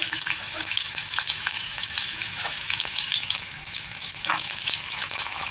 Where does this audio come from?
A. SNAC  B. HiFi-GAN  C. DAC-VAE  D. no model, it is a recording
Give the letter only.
C